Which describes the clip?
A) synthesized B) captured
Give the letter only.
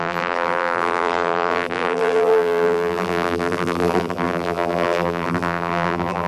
A